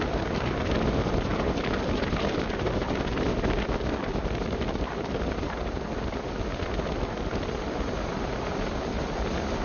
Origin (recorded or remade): recorded